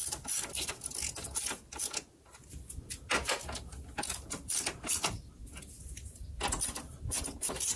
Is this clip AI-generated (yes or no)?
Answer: no